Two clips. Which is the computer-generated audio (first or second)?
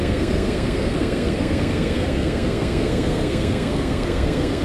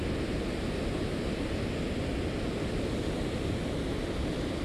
first